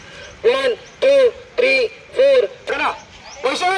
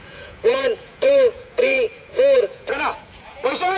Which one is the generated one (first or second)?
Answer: second